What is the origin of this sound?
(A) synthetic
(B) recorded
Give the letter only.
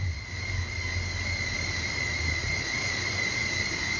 B